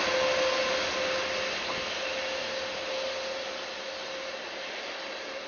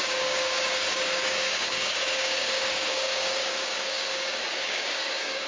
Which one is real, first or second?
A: first